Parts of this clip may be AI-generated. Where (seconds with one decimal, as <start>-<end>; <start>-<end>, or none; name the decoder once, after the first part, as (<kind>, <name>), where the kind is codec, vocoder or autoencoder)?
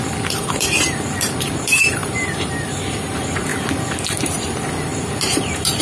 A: 0.0-3.5 (vocoder, BigVGAN v2); 4.1-5.8